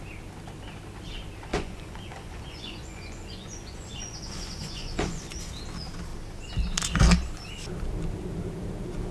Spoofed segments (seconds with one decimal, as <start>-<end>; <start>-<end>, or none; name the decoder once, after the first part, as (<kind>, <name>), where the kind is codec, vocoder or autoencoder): 1.5-5.5 (vocoder, Vocos)